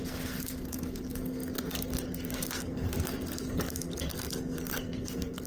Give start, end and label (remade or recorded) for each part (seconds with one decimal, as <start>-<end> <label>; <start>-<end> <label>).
0.0-5.5 remade